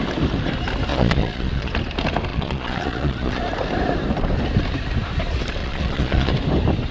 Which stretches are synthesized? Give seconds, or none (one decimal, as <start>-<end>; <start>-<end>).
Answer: 0.9-1.7; 2.3-3.4; 5.6-6.3